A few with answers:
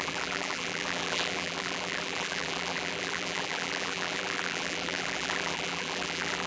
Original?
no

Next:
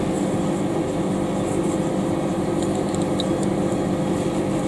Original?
yes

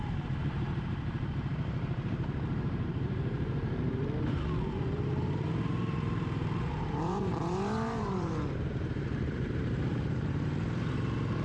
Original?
no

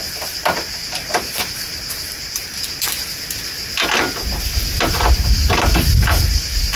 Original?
no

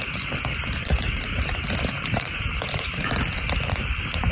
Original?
no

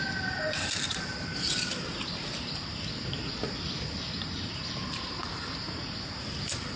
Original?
no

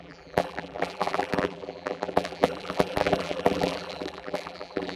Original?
no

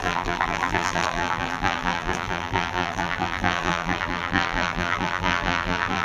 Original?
no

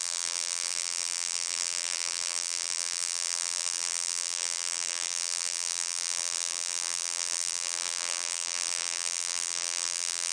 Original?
no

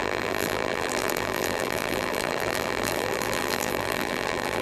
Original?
no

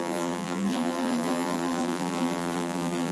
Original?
no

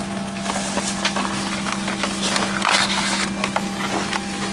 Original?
yes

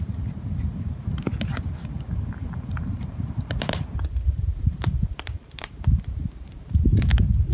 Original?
no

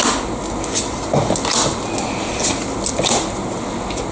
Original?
yes